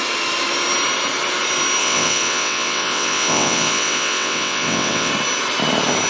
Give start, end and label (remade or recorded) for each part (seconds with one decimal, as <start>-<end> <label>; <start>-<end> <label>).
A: 0.0-1.8 recorded; 1.8-5.1 remade; 5.1-6.1 recorded